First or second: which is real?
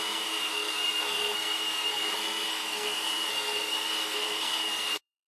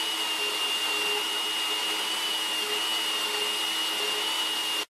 second